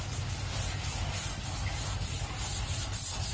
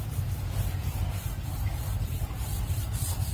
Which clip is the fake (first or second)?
second